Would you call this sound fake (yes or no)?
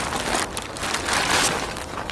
no